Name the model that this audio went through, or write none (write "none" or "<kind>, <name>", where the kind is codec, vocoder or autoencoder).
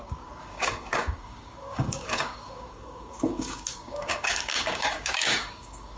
codec, DAC